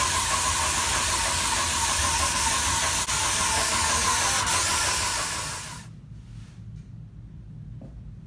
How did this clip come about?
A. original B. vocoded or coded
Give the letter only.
A